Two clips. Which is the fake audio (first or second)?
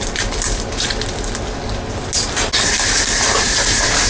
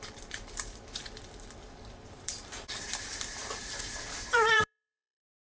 second